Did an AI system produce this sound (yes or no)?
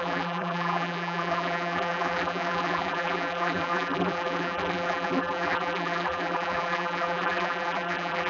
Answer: yes